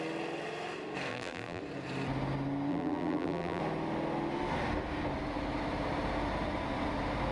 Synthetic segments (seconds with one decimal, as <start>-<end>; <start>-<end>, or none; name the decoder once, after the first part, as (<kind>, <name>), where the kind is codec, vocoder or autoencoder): 1.1-1.6 (vocoder, BigVGAN v2); 2.7-3.6